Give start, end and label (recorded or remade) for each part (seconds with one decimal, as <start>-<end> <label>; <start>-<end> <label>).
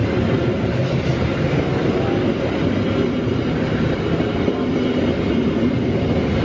0.0-6.4 recorded